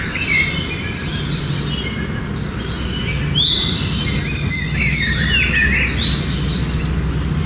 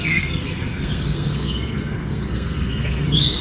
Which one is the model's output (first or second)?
second